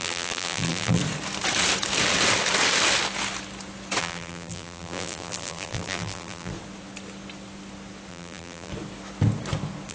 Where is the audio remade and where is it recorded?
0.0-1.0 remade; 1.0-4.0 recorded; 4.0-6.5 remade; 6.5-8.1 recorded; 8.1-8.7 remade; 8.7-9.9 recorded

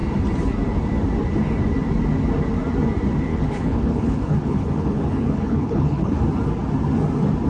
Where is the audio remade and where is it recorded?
0.0-3.3 recorded; 3.3-6.2 remade; 6.2-7.5 recorded

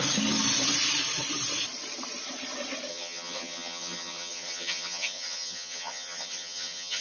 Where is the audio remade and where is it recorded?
0.0-2.9 recorded; 2.9-7.0 remade

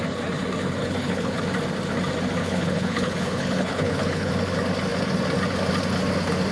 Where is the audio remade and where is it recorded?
0.0-0.8 recorded; 0.8-1.4 remade; 1.4-2.4 recorded; 2.4-4.3 remade; 4.3-6.5 recorded

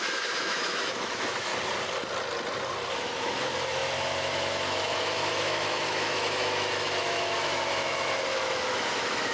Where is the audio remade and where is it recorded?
0.0-1.5 remade; 1.5-2.9 recorded; 2.9-9.3 remade

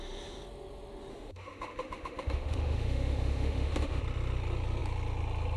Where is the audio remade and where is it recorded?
0.0-1.1 recorded; 1.1-4.0 remade; 4.0-5.6 recorded

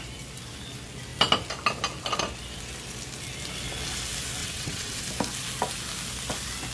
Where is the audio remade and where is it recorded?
0.0-4.4 recorded; 4.4-5.0 remade; 5.0-6.7 recorded